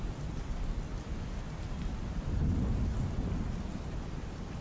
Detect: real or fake real